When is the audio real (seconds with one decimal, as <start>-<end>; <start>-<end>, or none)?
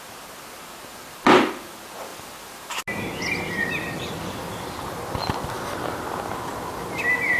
0.0-7.4